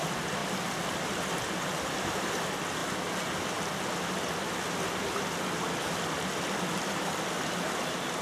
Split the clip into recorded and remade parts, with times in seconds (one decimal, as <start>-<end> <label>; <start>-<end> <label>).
0.0-8.2 recorded